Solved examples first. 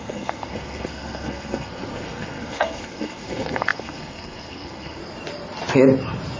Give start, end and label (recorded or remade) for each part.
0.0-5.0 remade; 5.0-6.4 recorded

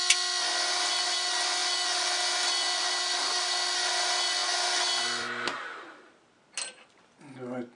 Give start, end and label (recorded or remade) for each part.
0.0-7.8 recorded